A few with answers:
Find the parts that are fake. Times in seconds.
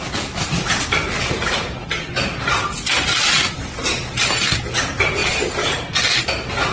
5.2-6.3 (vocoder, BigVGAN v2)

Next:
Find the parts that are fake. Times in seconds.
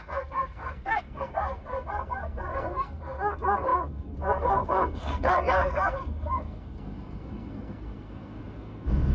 0.0-9.1 (codec, SNAC)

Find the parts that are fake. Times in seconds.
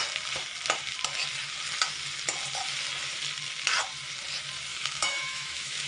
4.7-5.9 (autoencoder, DAC-VAE)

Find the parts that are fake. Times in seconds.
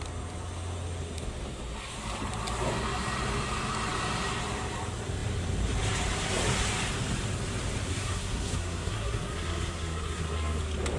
7.9-10.6 (codec, SNAC)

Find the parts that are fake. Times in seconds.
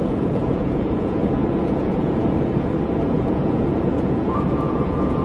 0.0-5.2 (vocoder, Vocos)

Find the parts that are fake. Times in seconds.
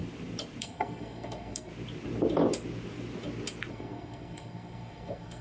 0.6-1.7 (codec, SNAC); 3.7-5.4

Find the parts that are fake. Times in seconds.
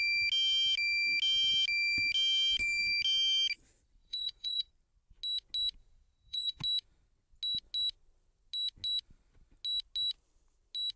4.0-4.7 (vocoder, Vocos); 5.8-6.6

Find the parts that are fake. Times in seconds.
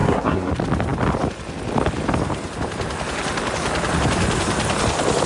0.0-0.5 (codec, SNAC)